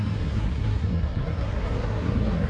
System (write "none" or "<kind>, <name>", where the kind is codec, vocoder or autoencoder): codec, SNAC